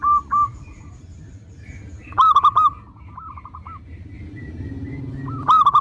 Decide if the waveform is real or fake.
real